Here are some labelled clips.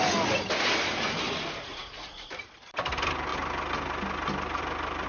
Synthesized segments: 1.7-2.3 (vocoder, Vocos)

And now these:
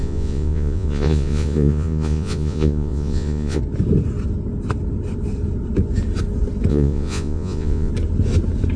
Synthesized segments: 0.0-3.6 (vocoder, Vocos); 6.7-7.9

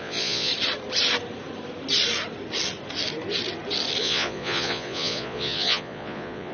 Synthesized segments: 0.0-0.5 (vocoder, Vocos); 4.0-6.5

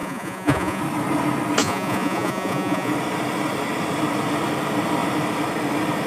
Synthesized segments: 0.0-0.8 (vocoder, Vocos); 1.6-2.9

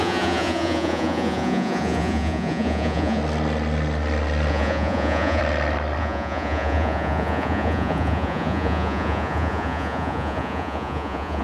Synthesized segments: 0.0-3.2 (vocoder, Vocos); 4.5-5.4; 6.0-11.4

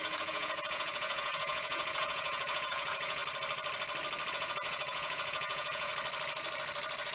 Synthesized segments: 0.0-3.2 (vocoder, Vocos); 4.3-5.9

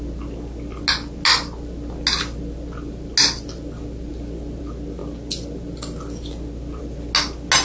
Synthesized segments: none

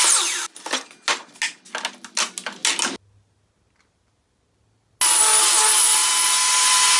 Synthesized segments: 6.0-7.0 (vocoder, Vocos)